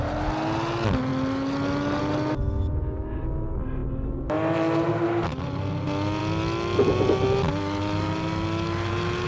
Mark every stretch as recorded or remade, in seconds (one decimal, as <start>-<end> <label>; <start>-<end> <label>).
0.0-9.3 recorded